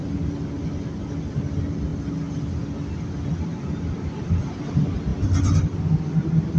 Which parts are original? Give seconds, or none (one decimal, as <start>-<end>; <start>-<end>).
0.0-6.6